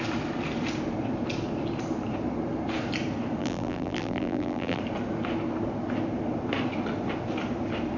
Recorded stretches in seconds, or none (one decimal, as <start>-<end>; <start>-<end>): 0.0-3.4; 4.8-8.0